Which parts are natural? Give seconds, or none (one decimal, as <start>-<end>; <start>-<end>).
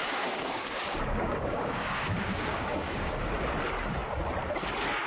3.1-5.1